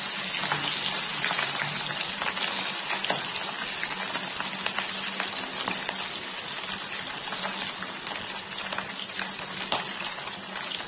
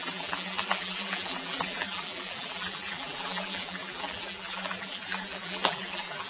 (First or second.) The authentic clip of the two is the first